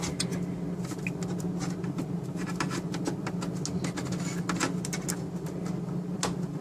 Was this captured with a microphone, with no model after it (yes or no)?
yes